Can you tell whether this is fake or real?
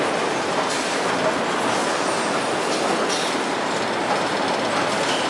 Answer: real